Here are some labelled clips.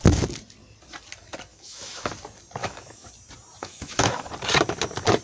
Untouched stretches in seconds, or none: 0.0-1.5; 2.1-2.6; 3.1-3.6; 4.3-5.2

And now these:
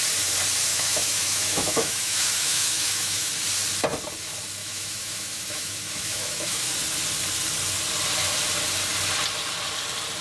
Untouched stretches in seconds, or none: 0.0-0.7; 3.3-4.6; 6.7-10.2